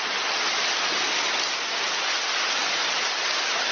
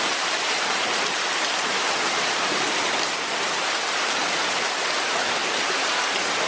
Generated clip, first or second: second